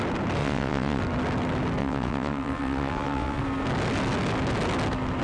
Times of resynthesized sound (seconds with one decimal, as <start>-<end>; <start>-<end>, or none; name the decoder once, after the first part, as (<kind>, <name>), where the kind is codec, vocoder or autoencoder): 0.4-1.0 (vocoder, WaveNeXt); 1.8-3.4